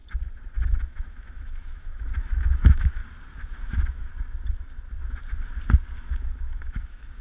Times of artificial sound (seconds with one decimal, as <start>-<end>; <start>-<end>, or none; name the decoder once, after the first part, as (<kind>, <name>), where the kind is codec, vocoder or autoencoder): 0.8-3.0 (autoencoder, DAC-VAE); 3.6-4.1; 6.0-7.2

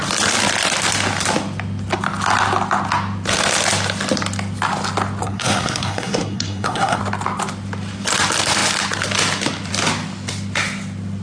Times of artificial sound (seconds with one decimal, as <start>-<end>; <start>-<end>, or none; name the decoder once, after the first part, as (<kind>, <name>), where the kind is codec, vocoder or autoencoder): 5.2-7.0 (codec, SNAC)

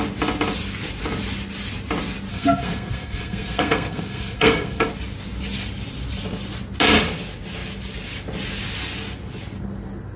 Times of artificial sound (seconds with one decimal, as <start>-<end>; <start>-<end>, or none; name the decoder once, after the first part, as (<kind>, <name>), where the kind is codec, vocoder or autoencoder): 2.3-4.9 (codec, SNAC)